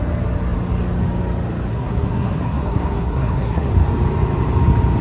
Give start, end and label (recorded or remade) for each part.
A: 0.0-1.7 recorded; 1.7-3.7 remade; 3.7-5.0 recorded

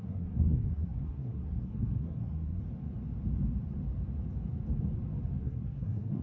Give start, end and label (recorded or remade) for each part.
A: 0.0-2.6 remade; 2.6-5.4 recorded; 5.4-6.2 remade

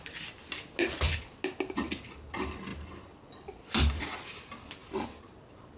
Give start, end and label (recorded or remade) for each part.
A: 0.0-5.8 recorded

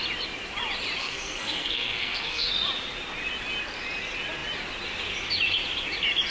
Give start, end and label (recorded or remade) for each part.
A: 0.0-1.0 recorded; 1.0-2.5 remade; 2.5-6.3 recorded